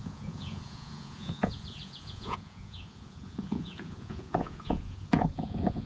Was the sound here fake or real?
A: fake